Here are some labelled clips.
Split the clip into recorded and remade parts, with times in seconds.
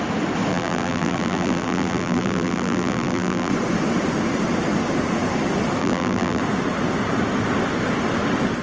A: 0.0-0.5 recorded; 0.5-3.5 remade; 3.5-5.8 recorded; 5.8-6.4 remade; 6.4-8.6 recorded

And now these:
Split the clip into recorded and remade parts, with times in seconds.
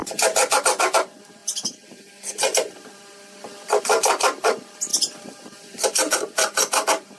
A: 0.0-0.6 recorded; 0.6-7.2 remade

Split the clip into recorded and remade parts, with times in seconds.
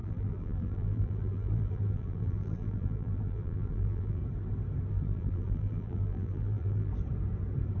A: 0.0-4.2 remade; 4.2-4.9 recorded; 4.9-6.9 remade; 6.9-7.8 recorded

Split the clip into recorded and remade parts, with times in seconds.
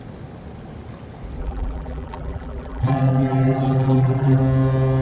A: 0.0-1.4 recorded; 1.4-4.4 remade; 4.4-5.0 recorded